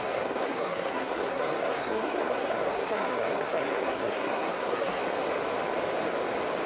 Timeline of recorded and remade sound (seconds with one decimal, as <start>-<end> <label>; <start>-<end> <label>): 0.0-5.0 remade; 5.0-6.7 recorded